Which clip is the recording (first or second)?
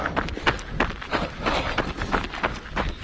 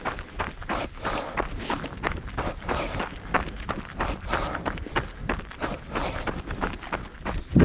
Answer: first